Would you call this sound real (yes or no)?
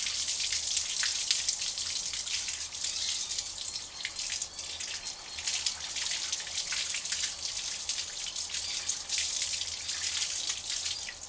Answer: yes